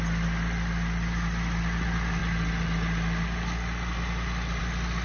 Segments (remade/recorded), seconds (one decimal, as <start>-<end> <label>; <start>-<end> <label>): 0.0-5.0 recorded

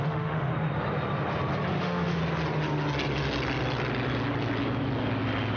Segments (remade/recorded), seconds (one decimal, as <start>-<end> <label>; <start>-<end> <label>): 0.0-0.5 remade; 0.5-1.7 recorded; 1.7-2.2 remade; 2.2-5.6 recorded

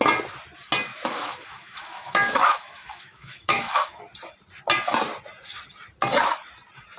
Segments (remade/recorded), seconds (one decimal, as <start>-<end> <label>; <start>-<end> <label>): 0.0-0.9 recorded; 0.9-4.0 remade; 4.0-7.0 recorded

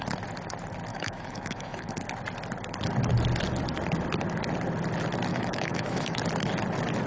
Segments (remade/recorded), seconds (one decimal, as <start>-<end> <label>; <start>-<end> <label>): 0.0-0.9 recorded; 0.9-1.9 remade; 1.9-5.3 recorded; 5.3-6.2 remade; 6.2-7.1 recorded